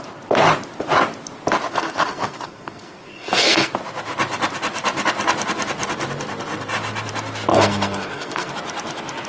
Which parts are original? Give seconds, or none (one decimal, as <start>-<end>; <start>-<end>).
0.0-1.7; 3.7-7.5; 8.5-9.3